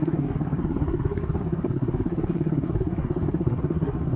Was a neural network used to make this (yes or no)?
yes